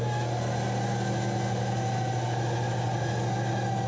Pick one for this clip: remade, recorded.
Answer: recorded